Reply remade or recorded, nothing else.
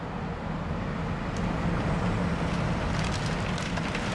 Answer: recorded